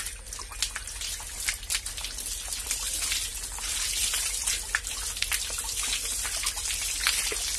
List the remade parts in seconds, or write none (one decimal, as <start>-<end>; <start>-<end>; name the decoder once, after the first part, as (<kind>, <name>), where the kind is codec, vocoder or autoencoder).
none